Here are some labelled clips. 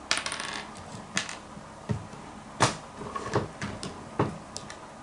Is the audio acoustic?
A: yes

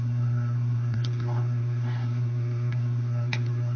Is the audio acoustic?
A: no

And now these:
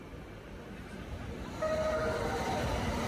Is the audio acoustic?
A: yes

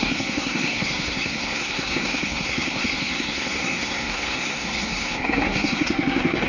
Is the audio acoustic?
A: no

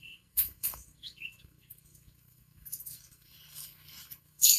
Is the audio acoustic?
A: no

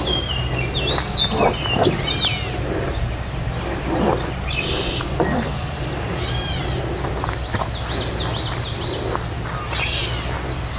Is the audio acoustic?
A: yes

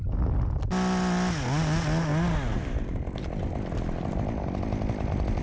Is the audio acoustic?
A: yes